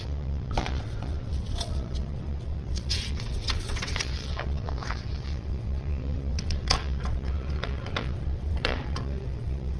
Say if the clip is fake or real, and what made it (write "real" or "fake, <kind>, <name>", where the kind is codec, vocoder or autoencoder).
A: fake, vocoder, WaveNeXt